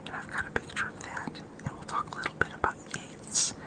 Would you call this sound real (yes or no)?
yes